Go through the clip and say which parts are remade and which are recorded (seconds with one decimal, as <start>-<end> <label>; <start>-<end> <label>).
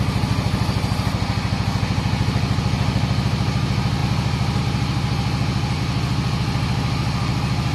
0.0-7.7 recorded